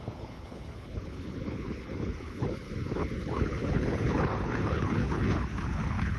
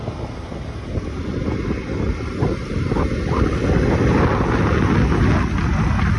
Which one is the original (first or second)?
second